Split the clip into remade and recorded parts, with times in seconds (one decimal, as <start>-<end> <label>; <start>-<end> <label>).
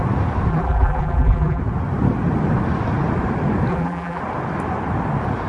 0.0-0.5 recorded; 0.5-1.6 remade; 1.6-3.7 recorded; 3.7-4.2 remade; 4.2-5.5 recorded